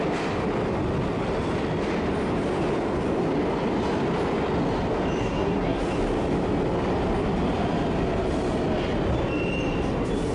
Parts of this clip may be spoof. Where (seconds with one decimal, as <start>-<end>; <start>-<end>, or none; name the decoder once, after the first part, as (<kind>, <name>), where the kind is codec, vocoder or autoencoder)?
5.2-5.8 (codec, SNAC)